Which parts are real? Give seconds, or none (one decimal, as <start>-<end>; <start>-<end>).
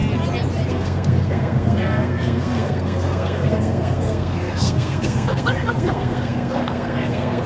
0.0-0.7